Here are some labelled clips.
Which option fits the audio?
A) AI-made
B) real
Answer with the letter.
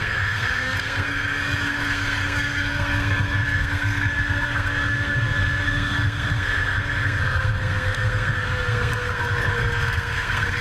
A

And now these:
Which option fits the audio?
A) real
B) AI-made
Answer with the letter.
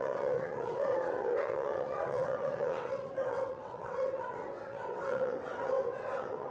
B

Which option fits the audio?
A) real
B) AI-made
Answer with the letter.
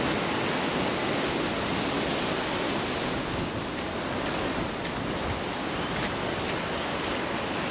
A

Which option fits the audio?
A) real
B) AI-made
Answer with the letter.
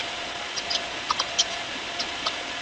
B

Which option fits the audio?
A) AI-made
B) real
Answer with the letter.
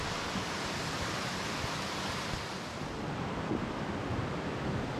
B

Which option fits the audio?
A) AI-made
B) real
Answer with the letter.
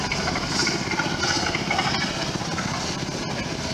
B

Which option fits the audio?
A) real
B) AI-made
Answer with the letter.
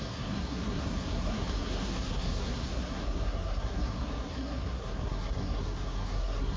B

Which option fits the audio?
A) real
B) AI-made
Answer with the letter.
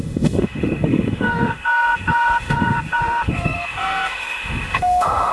B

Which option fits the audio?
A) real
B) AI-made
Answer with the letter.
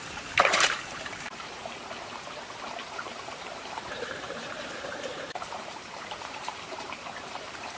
B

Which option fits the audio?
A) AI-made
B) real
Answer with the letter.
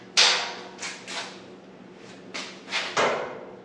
B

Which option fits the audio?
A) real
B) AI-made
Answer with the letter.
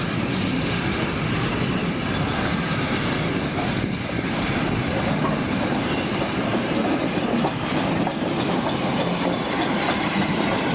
B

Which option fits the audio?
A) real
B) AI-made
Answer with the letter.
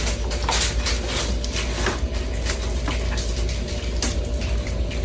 A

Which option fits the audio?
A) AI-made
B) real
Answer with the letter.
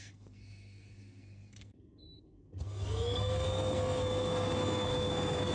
A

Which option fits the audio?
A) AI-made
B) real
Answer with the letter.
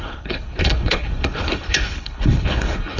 A